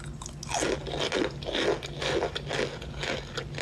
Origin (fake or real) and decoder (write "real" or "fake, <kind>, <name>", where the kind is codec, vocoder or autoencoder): real